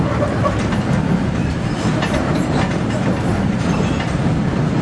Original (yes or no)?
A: no